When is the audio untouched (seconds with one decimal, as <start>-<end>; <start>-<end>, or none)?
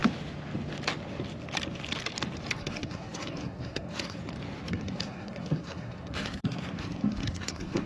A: 0.0-2.5; 4.2-4.7